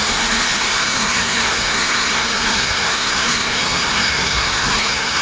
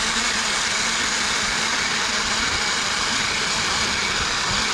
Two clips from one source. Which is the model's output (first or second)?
first